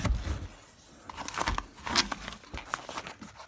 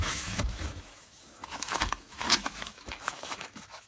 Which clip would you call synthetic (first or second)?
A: second